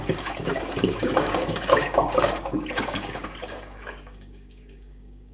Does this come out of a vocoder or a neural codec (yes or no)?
yes